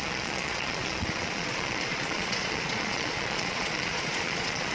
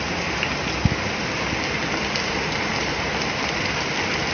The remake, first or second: first